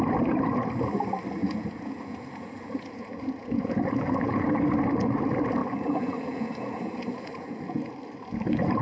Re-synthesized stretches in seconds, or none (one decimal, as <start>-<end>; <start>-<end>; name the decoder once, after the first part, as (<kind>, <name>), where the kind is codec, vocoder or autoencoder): 1.4-4.6 (vocoder, Vocos); 5.6-7.9